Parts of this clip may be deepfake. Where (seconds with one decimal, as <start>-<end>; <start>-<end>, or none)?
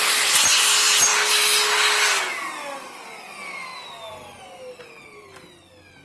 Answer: none